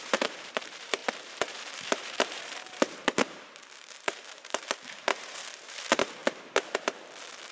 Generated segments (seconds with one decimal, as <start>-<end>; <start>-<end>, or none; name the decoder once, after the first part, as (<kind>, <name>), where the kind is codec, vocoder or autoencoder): 0.0-6.2 (vocoder, BigVGAN v2)